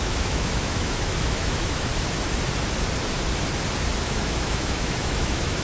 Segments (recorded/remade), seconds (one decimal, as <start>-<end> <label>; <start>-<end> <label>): 0.0-1.9 remade; 1.9-4.0 recorded; 4.0-5.6 remade